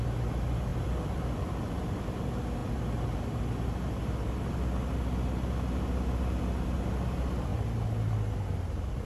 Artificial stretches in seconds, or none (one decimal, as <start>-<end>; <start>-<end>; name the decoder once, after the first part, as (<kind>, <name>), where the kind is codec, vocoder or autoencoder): none